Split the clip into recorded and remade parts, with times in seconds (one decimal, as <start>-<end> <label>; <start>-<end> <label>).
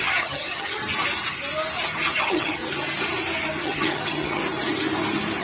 0.0-0.8 remade; 0.8-2.2 recorded; 2.2-2.6 remade; 2.6-3.6 recorded; 3.6-4.4 remade; 4.4-5.4 recorded